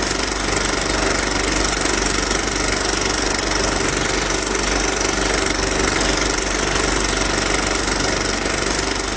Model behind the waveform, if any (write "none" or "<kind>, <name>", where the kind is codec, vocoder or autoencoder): none